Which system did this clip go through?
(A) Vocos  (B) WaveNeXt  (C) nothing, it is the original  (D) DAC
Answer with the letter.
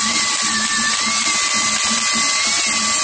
C